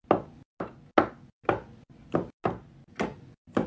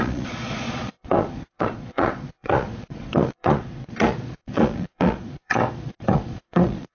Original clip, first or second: first